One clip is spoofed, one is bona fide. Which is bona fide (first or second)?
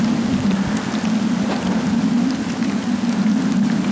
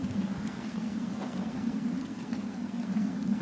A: first